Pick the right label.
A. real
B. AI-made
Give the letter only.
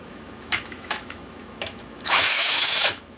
B